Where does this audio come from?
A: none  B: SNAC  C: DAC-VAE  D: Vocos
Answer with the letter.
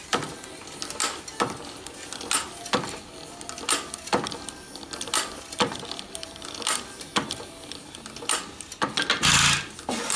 A